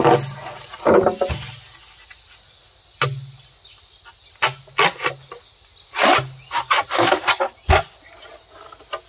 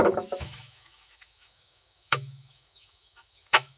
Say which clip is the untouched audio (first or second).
first